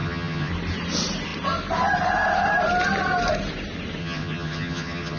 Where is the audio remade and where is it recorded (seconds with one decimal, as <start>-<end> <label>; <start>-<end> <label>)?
0.0-0.5 remade; 0.5-4.0 recorded; 4.0-5.2 remade